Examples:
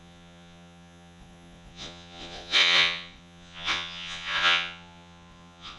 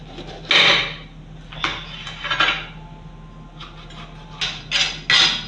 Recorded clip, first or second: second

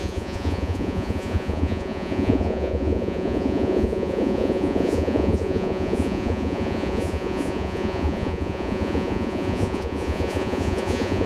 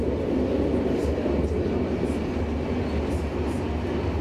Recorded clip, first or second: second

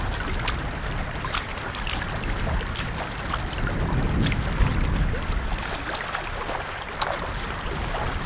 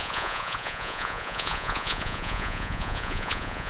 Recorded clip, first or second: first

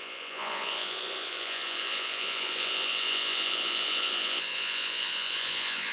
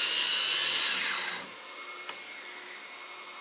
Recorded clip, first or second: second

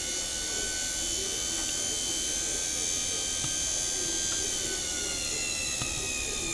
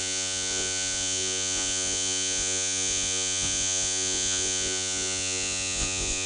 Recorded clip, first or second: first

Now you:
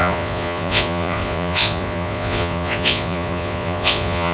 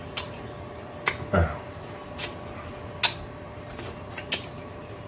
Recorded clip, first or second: second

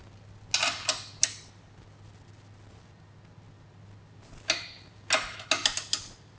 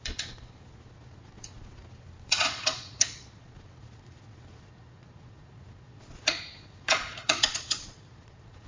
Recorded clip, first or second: first